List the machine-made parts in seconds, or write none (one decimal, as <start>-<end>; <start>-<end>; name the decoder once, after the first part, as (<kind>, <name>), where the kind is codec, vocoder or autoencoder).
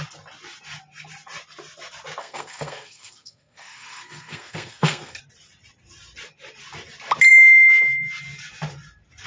2.2-5.2 (codec, SNAC)